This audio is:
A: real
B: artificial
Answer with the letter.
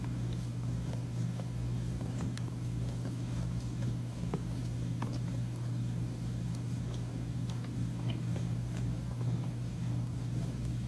B